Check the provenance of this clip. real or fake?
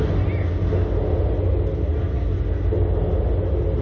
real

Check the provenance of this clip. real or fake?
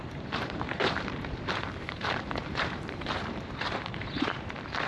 fake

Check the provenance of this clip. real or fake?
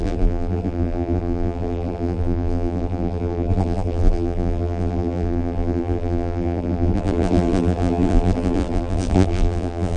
fake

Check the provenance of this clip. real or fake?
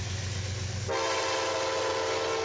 real